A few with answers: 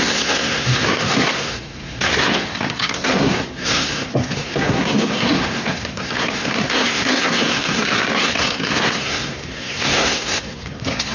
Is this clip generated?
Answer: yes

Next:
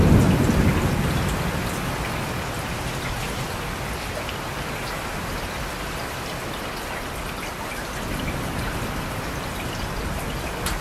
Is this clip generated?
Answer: no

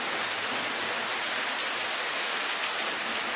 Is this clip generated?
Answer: no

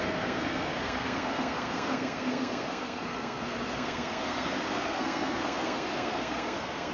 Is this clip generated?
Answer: yes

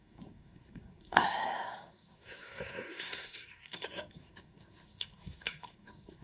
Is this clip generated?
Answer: yes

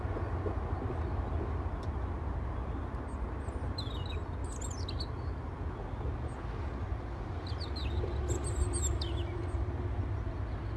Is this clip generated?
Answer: no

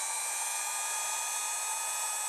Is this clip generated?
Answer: no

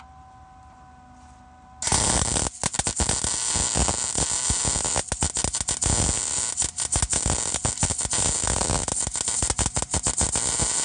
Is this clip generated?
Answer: no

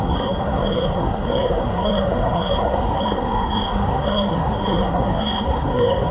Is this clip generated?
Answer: yes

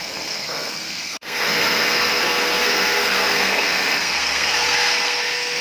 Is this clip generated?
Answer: yes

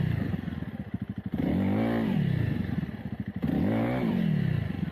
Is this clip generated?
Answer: no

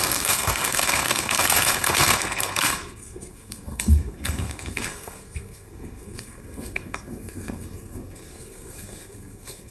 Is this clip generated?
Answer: yes